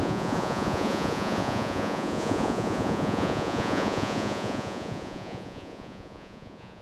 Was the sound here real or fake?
fake